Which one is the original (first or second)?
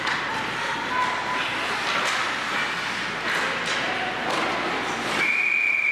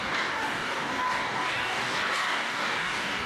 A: first